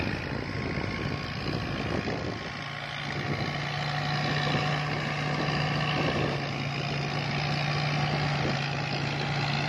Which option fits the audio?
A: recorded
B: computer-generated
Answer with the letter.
A